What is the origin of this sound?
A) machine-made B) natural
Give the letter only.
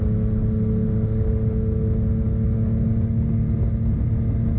B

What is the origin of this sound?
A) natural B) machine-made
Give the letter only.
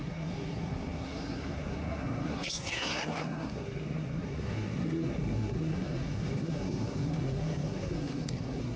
B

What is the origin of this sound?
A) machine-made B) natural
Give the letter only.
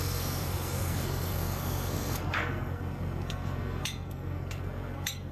A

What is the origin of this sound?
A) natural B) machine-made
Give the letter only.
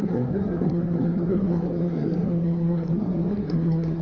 B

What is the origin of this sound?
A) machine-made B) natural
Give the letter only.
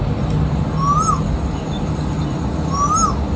B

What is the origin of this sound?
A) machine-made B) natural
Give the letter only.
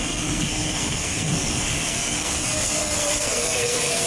A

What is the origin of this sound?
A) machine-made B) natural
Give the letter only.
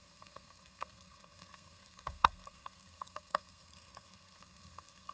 A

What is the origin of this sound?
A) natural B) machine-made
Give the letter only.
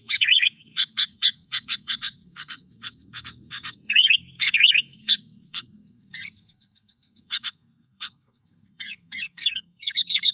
B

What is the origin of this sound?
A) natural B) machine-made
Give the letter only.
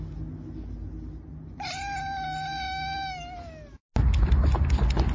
A